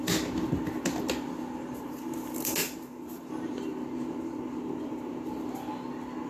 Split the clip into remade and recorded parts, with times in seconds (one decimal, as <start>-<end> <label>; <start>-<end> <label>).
0.0-2.6 recorded; 2.6-3.3 remade; 3.3-6.3 recorded